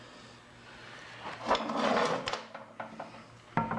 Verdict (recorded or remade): recorded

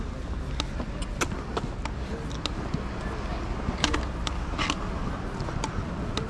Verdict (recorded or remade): recorded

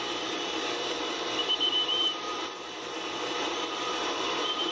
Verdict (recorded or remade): remade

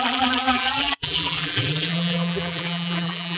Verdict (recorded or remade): remade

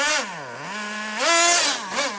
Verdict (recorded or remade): recorded